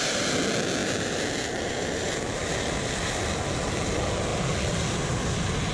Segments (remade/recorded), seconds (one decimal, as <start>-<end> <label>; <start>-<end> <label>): 0.0-0.8 recorded; 0.8-3.4 remade; 3.4-5.7 recorded